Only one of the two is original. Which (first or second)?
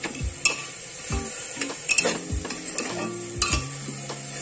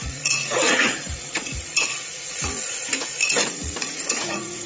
first